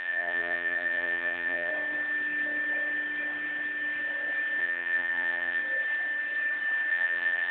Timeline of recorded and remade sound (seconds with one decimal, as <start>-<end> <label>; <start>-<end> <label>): 0.0-1.7 remade; 1.7-4.6 recorded; 4.6-5.6 remade; 5.6-6.9 recorded; 6.9-7.5 remade